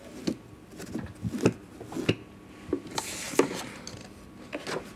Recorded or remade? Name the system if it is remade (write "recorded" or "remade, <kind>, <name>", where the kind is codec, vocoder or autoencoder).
recorded